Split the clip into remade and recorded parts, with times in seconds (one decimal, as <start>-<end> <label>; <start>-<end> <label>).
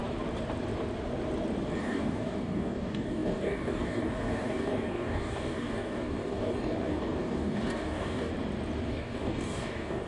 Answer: 0.0-1.8 recorded; 1.8-8.3 remade; 8.3-8.9 recorded; 8.9-10.1 remade